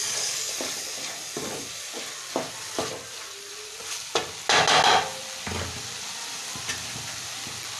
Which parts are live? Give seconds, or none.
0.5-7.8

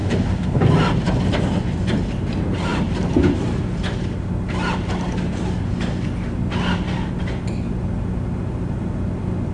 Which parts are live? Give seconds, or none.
0.6-9.5

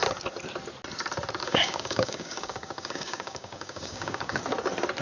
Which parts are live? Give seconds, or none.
0.0-1.4; 4.4-5.0